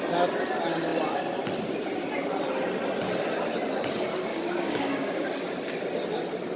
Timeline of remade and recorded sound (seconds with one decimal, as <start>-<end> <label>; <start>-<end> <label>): 0.0-4.3 recorded; 4.3-5.2 remade; 5.2-6.6 recorded